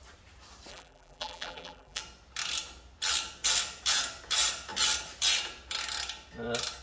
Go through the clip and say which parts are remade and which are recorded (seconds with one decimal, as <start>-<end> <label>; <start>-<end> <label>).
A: 0.0-0.7 recorded; 0.7-2.0 remade; 2.0-6.8 recorded

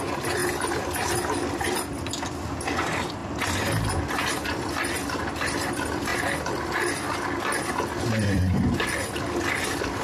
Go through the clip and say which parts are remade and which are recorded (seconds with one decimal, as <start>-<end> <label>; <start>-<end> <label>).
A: 0.0-3.2 remade; 3.2-4.3 recorded; 4.3-6.1 remade; 6.1-7.7 recorded; 7.7-10.0 remade